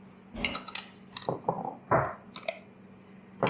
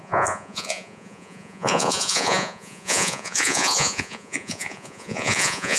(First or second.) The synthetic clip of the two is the second